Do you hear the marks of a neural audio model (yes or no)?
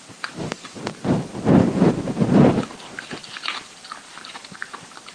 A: yes